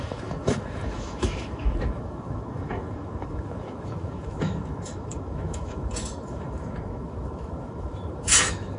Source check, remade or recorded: remade